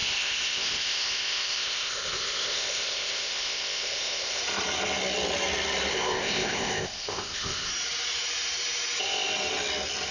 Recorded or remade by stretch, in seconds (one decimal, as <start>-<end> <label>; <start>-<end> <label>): 0.0-4.4 remade; 4.4-5.9 recorded; 5.9-7.7 remade; 7.7-10.1 recorded